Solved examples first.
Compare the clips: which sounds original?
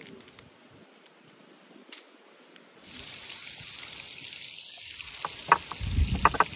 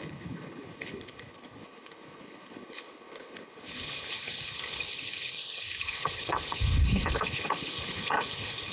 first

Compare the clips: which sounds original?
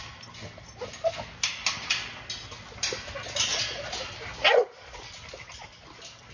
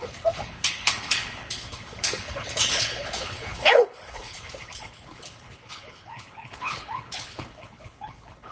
first